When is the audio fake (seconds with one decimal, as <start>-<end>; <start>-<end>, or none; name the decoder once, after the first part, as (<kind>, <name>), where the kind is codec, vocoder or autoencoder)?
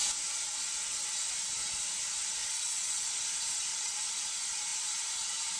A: 2.4-3.0 (vocoder, WaveNeXt); 3.7-4.2